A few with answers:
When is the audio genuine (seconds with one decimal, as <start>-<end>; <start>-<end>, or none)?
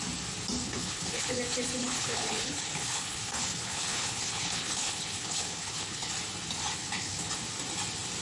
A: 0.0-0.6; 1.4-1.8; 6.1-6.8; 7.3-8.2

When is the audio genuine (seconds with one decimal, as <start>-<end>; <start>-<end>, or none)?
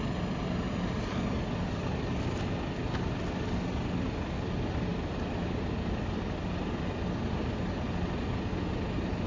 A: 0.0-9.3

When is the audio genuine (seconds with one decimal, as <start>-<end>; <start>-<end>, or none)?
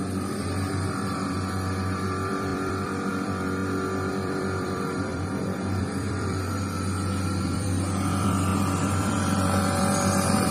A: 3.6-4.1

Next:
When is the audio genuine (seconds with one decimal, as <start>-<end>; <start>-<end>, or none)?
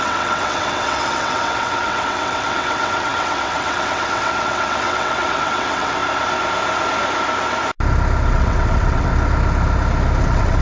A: 6.0-8.3; 9.1-10.2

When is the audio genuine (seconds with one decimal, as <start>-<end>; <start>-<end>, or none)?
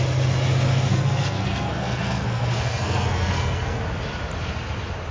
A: 0.0-0.9; 3.8-5.1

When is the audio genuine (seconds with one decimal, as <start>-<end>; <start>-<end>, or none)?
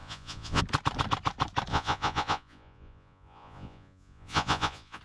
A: 0.6-1.7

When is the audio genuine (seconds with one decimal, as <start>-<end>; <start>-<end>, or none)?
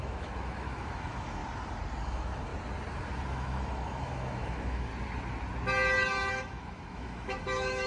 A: 1.4-2.0; 2.5-3.3; 4.9-6.3